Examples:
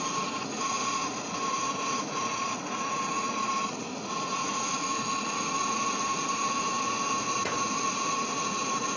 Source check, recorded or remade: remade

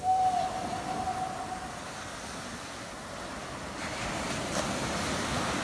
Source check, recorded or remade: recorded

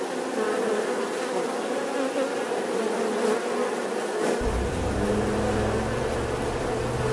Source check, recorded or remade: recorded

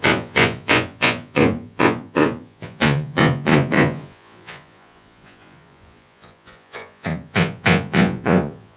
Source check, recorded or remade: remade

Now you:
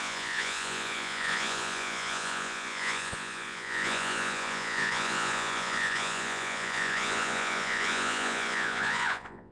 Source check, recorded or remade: remade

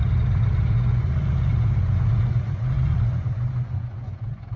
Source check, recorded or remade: remade